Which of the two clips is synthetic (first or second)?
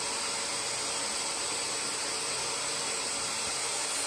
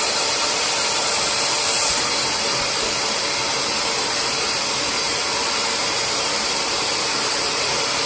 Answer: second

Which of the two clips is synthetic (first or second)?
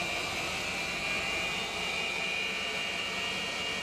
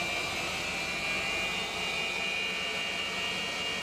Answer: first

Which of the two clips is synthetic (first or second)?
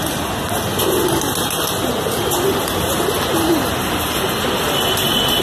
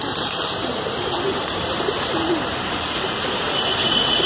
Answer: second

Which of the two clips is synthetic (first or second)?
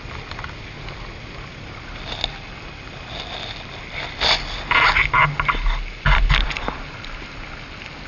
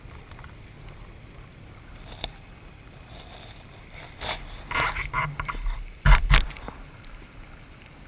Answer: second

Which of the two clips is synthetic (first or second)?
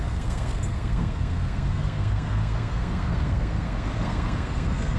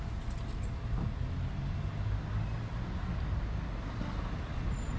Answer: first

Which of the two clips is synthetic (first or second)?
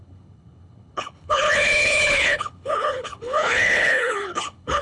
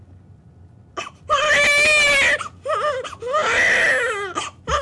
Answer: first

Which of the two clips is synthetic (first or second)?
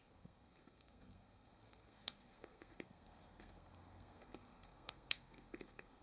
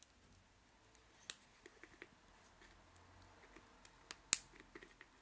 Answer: first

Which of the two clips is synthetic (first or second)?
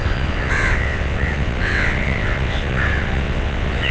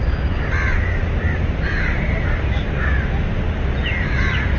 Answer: first